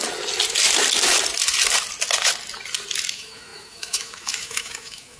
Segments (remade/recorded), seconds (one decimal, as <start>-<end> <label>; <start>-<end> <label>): 0.0-3.1 recorded; 3.1-5.2 remade